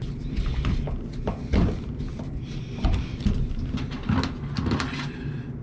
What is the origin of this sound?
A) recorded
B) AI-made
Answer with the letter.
A